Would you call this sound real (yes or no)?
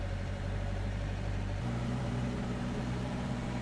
no